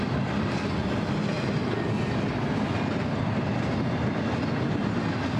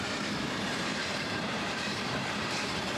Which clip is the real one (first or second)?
first